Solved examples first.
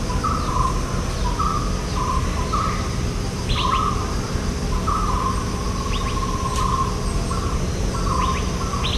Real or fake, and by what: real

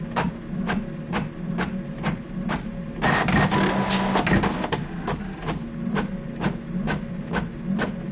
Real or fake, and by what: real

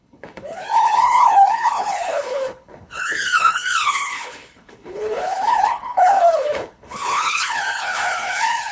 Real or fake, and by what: fake, codec, HILCodec